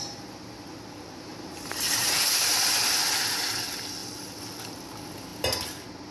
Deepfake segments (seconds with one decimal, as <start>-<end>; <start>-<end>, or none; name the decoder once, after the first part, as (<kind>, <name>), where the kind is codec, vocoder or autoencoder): 1.3-3.0 (vocoder, BigVGAN v2)